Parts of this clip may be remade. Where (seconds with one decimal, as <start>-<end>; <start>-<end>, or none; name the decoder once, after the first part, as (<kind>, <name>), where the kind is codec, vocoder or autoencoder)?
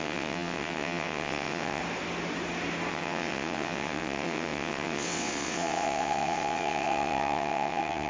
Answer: 0.0-1.8 (vocoder, WaveNeXt); 2.9-8.1